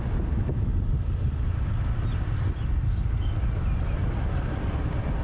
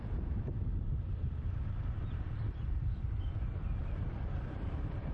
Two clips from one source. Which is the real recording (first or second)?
first